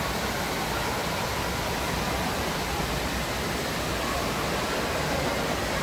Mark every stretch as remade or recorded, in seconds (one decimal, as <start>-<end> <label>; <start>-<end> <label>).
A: 0.0-1.0 recorded; 1.0-4.5 remade; 4.5-5.8 recorded